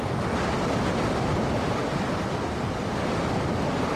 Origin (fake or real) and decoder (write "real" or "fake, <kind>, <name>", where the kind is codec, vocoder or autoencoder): real